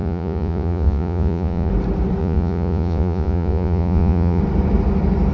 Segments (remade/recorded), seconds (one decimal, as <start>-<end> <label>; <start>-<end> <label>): 0.0-1.7 remade; 1.7-2.2 recorded; 2.2-4.4 remade; 4.4-5.3 recorded